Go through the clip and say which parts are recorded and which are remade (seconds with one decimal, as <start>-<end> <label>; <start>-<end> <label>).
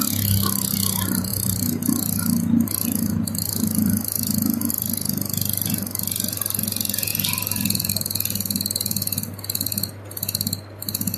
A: 0.0-11.2 recorded